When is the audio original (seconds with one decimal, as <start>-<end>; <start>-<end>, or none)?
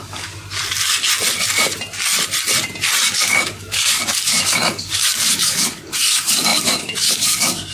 0.4-3.2